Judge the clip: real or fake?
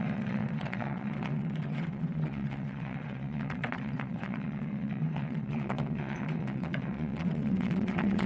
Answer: fake